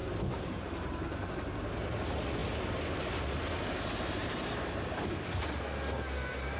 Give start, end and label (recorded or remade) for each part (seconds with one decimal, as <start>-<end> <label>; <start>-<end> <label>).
0.0-1.8 remade; 1.8-4.2 recorded; 4.2-5.6 remade; 5.6-6.6 recorded